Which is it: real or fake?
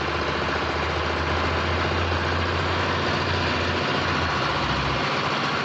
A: real